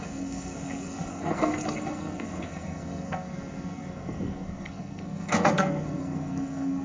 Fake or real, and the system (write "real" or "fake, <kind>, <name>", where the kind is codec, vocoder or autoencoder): fake, codec, SNAC